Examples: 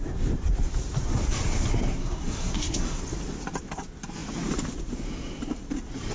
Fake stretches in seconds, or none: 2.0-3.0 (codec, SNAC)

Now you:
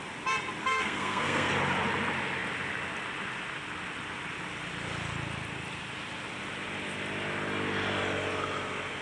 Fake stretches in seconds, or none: 0.6-1.5 (codec, SNAC)

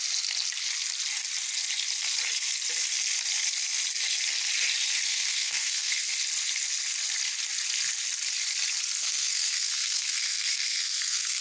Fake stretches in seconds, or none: 5.1-6.0 (codec, SNAC); 9.0-11.4

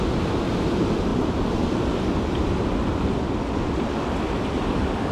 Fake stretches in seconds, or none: none

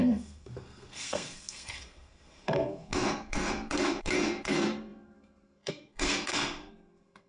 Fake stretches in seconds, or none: 0.0-7.3 (codec, SNAC)

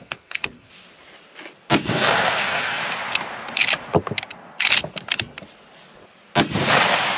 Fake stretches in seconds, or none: 0.0-0.7 (codec, SNAC); 1.8-2.8

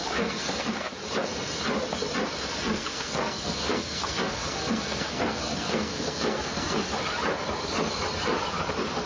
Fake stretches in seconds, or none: 0.0-0.9 (codec, SNAC); 2.6-6.9